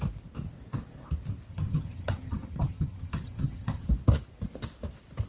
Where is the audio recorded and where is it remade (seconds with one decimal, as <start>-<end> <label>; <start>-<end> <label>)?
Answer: 0.0-1.5 recorded; 1.5-3.9 remade; 3.9-5.3 recorded